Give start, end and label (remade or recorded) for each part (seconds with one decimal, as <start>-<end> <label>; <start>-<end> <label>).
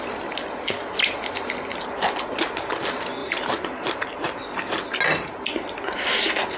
0.0-3.2 recorded; 3.2-4.1 remade; 4.1-6.6 recorded